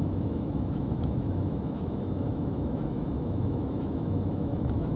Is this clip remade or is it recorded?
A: remade